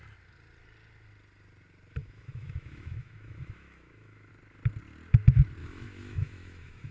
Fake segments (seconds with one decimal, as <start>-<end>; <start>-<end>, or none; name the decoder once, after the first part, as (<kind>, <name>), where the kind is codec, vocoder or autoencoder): 2.0-4.3 (autoencoder, DAC-VAE); 5.6-6.9

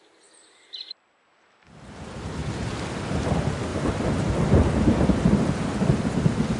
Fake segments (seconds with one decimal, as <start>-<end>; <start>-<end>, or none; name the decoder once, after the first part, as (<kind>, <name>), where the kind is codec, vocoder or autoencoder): none

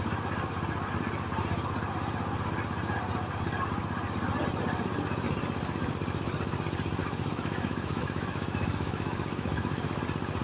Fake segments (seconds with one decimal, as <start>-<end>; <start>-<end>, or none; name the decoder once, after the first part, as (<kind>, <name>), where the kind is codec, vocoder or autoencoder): 7.0-10.0 (autoencoder, DAC-VAE)

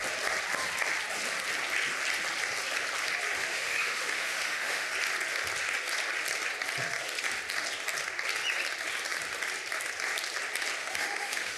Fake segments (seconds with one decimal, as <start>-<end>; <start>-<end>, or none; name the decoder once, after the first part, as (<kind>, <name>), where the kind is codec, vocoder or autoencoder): 3.4-4.9 (autoencoder, DAC-VAE); 10.8-11.6

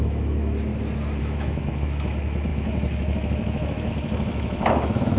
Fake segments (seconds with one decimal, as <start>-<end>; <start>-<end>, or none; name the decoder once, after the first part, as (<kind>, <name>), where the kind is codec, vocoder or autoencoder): 0.0-0.7 (autoencoder, DAC-VAE); 1.2-5.2

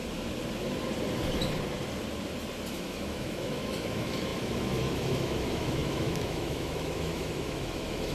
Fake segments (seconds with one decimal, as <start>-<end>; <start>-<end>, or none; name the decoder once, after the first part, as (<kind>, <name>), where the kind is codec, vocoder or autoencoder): 2.7-8.1 (autoencoder, DAC-VAE)

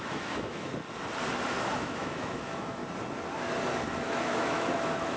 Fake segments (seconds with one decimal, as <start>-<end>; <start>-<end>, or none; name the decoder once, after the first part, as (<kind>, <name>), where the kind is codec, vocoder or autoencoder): 0.0-0.7 (autoencoder, DAC-VAE); 1.8-2.8; 4.0-5.2